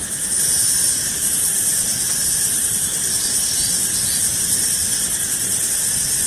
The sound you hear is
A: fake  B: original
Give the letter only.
B